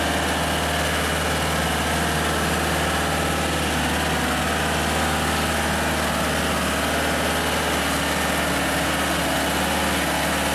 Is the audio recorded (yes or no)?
yes